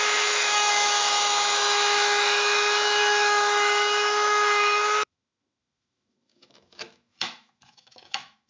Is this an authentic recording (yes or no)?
no